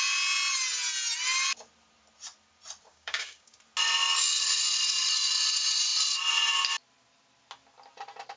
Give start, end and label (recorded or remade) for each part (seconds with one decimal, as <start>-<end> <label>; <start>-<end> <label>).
0.0-2.9 recorded; 2.9-3.5 remade; 3.5-8.4 recorded

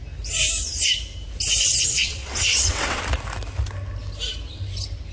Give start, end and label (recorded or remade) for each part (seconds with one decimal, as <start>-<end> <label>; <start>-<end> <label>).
0.0-1.9 recorded; 1.9-3.0 remade; 3.0-5.1 recorded

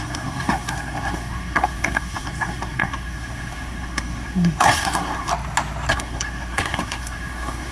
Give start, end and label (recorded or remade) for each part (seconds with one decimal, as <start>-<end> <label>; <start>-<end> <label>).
0.0-5.3 remade; 5.3-5.9 recorded; 5.9-7.7 remade

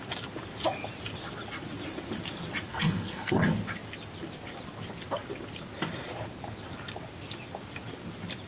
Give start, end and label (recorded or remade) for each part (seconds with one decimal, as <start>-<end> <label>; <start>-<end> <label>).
0.0-2.7 recorded; 2.7-3.4 remade; 3.4-8.5 recorded

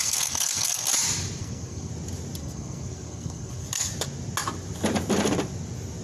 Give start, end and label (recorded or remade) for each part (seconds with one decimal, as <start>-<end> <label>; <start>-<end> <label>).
0.0-0.9 remade; 0.9-1.4 recorded; 1.4-1.9 remade; 1.9-2.4 recorded; 2.4-3.9 remade; 3.9-6.0 recorded

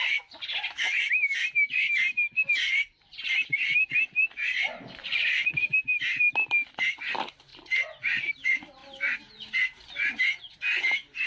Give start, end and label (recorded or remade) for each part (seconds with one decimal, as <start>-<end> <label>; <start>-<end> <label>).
0.0-7.5 recorded; 7.5-8.3 remade; 8.3-11.3 recorded

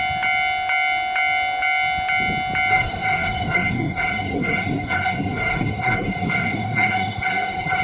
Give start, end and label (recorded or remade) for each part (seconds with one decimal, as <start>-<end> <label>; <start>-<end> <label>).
0.0-2.7 recorded; 2.7-7.8 remade